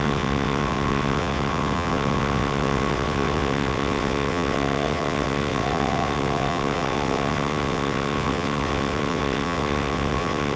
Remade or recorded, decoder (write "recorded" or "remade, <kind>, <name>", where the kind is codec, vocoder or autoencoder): remade, vocoder, WaveNeXt